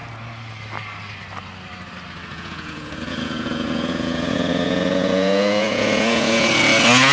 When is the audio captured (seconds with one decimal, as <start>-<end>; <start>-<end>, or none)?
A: 0.0-2.3; 6.5-7.1